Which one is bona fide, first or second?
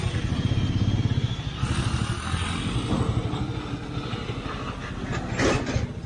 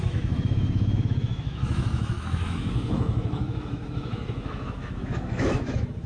first